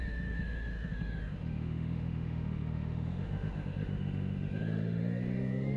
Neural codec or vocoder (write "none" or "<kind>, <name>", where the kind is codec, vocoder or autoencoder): autoencoder, DAC-VAE